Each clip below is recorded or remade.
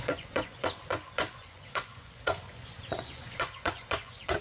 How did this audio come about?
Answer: remade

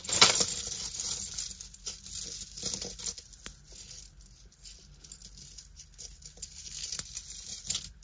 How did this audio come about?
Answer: recorded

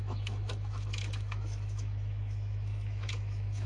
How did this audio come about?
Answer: remade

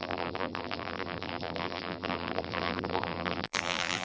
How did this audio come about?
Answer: remade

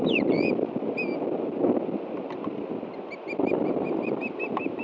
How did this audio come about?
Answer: recorded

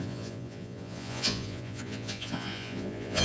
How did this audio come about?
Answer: remade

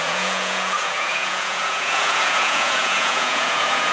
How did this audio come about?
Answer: remade